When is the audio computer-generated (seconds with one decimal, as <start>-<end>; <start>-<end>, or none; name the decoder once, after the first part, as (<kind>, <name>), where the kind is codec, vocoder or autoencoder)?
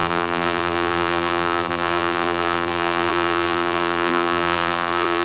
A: 0.0-5.2 (vocoder, BigVGAN v2)